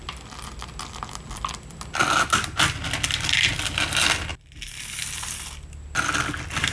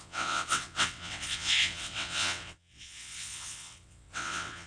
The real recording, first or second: first